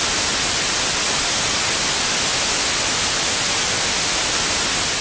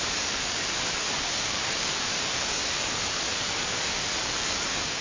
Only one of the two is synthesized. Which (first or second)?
second